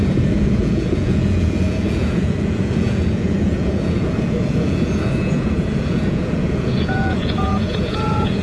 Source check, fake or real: fake